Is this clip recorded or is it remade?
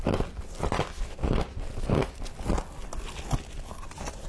recorded